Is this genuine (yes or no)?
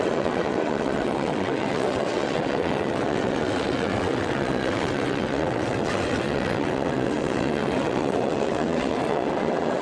no